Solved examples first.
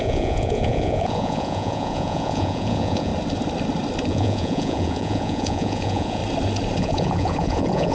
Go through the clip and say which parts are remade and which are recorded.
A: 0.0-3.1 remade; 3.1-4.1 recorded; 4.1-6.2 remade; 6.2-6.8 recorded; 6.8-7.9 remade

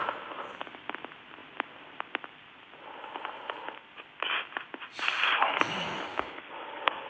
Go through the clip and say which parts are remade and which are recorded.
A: 0.0-6.1 recorded; 6.1-7.1 remade

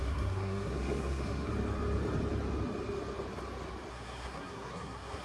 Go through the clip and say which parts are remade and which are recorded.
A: 0.0-1.5 remade; 1.5-3.9 recorded; 3.9-5.2 remade